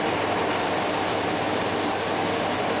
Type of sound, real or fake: real